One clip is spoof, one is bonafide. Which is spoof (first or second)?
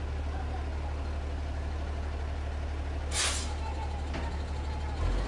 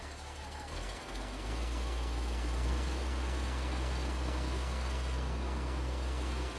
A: second